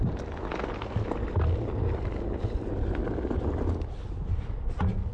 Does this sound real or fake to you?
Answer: real